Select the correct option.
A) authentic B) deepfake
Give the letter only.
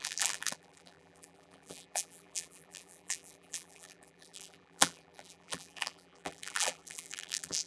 B